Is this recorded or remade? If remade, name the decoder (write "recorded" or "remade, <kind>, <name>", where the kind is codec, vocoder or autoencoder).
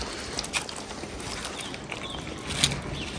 recorded